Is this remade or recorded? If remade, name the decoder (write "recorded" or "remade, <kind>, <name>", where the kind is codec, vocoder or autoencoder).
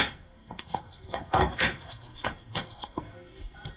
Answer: remade, codec, SNAC